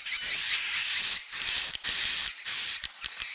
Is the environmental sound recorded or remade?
recorded